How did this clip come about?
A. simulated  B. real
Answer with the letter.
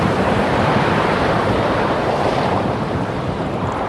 A